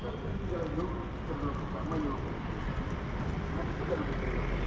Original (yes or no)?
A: yes